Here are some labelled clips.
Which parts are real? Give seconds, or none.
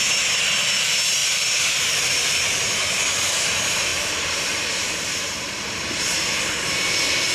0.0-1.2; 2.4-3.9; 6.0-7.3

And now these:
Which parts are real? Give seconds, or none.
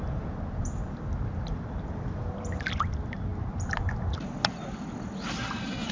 0.0-5.9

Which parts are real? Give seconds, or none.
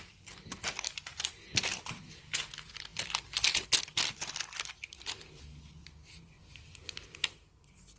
0.0-8.0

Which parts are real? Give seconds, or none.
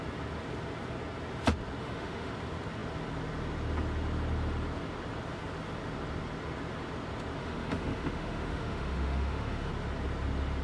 0.0-1.8; 2.3-7.4; 9.7-10.6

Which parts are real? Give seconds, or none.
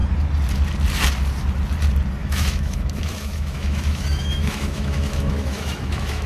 0.0-2.2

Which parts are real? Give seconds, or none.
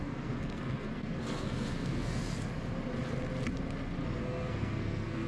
2.2-4.2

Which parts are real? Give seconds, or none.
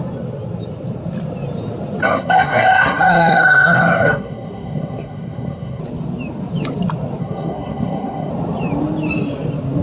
0.0-2.0; 5.8-7.2; 8.3-9.8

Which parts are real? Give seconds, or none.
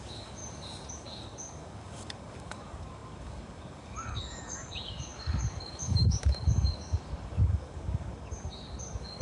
0.4-0.9